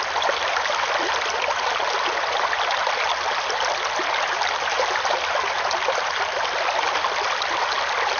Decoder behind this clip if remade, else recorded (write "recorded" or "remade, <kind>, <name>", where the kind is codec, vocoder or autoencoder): recorded